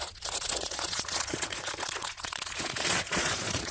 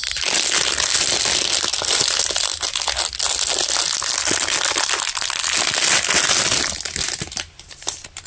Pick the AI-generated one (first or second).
first